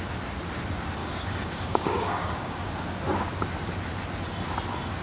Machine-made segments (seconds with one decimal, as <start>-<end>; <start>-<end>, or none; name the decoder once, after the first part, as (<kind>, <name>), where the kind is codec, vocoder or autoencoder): 1.0-2.7 (codec, DAC)